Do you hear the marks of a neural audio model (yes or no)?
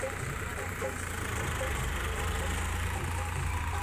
yes